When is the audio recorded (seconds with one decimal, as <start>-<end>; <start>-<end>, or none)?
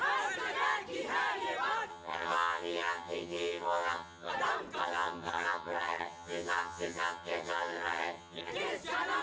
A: 0.0-1.9; 4.3-4.8; 8.5-9.2